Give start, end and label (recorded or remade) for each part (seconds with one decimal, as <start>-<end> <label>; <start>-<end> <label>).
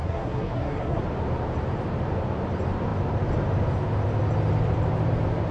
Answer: 0.0-1.0 remade; 1.0-5.5 recorded